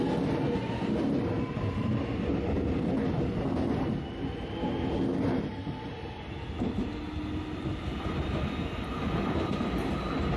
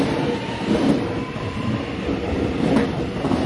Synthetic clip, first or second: second